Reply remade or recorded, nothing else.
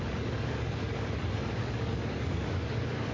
remade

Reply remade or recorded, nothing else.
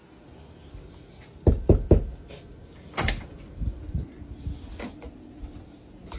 recorded